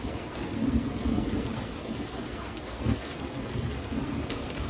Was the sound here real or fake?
fake